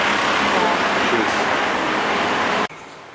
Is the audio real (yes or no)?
yes